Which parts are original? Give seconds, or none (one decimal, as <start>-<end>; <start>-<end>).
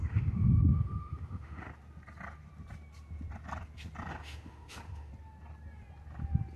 1.7-4.1; 5.1-6.6